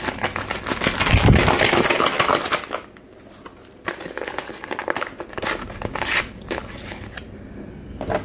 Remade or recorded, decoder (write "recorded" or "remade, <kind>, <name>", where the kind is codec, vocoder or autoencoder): recorded